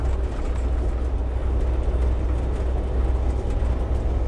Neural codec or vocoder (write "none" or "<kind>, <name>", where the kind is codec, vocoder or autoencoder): none